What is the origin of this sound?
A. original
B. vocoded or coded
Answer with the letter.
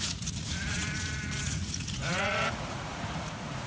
B